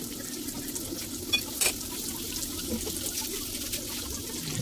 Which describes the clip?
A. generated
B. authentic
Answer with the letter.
B